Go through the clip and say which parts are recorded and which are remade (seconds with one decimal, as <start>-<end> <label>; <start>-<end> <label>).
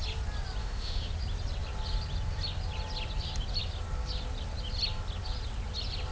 0.0-0.6 recorded; 0.6-1.1 remade; 1.1-6.1 recorded